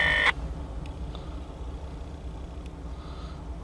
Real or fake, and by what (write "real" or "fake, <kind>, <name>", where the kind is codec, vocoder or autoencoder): real